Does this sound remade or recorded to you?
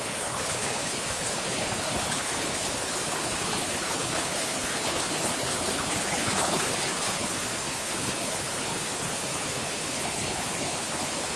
remade